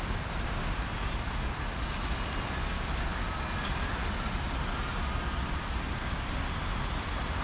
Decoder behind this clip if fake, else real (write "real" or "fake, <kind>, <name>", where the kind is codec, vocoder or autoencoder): real